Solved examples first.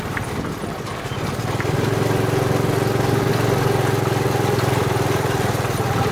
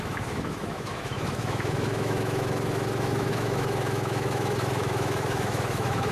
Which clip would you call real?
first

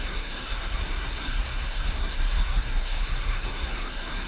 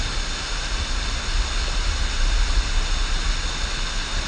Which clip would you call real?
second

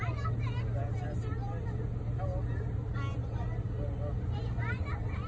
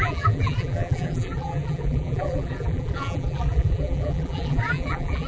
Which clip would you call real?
first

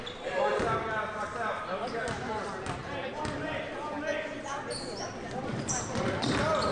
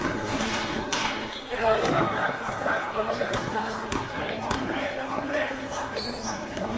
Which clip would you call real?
first